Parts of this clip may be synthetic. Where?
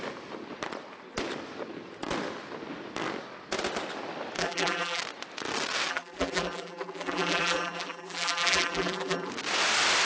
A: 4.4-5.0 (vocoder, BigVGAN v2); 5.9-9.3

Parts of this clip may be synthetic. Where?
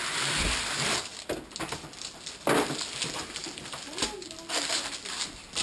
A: none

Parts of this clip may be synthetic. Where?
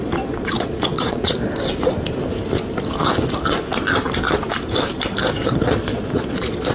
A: 0.0-1.5 (vocoder, Vocos); 5.5-6.7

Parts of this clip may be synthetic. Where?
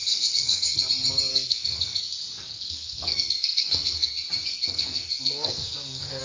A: 0.0-0.8 (codec, SNAC); 1.3-2.0; 2.4-4.1; 4.5-6.2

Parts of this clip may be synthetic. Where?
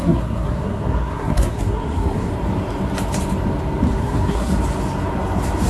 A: 0.0-2.3 (codec, SNAC); 4.0-4.5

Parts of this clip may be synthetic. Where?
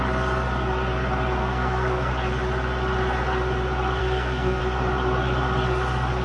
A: 1.4-2.1 (codec, SNAC); 4.0-4.6